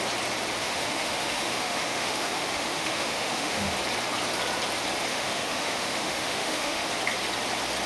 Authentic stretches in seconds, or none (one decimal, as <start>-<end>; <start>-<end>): 0.0-0.6; 3.7-5.1; 6.9-7.9